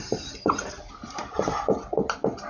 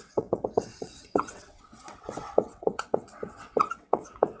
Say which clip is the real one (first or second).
first